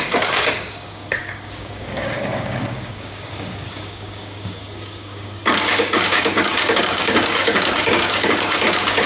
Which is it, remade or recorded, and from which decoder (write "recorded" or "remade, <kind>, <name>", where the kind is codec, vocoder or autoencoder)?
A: remade, codec, DAC